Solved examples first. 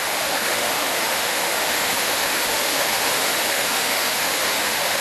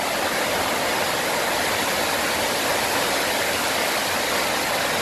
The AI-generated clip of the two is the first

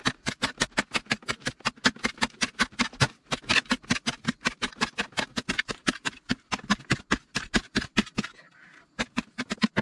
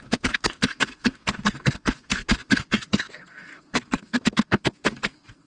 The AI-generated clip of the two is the second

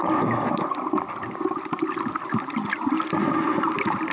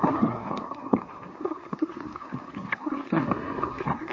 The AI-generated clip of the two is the second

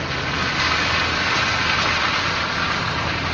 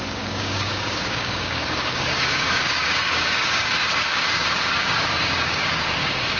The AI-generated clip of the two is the second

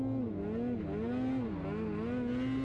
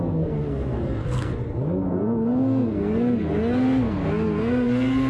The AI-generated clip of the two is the second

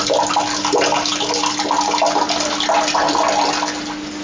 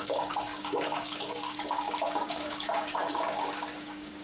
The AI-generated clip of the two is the second